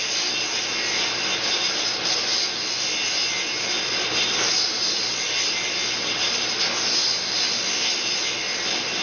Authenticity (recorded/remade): recorded